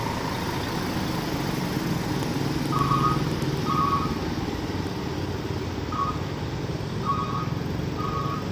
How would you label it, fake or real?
real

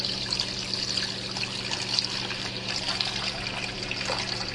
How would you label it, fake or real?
real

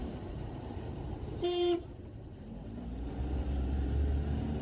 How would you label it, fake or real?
fake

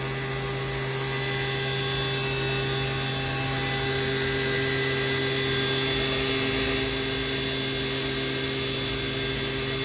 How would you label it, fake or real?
real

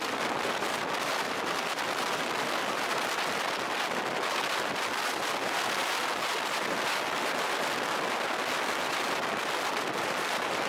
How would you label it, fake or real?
real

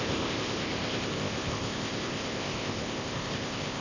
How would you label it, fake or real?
fake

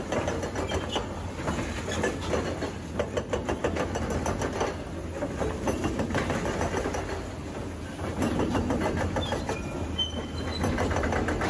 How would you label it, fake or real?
real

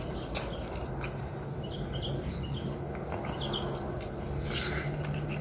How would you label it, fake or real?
real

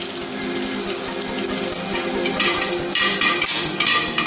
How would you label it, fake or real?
real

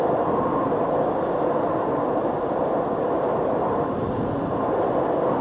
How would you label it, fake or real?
real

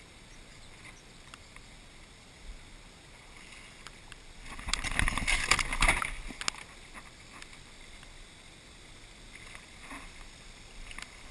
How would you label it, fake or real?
real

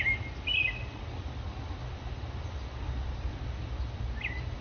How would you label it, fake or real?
real